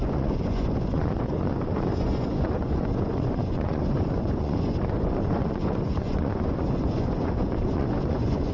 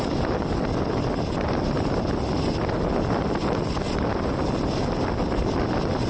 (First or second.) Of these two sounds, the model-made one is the first